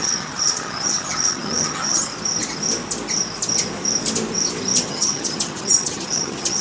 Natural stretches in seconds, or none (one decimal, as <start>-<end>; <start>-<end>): 2.1-4.9